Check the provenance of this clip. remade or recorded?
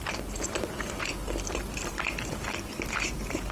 remade